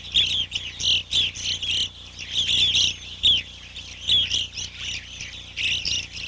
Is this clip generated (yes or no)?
no